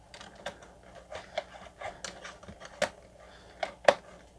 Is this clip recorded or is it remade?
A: recorded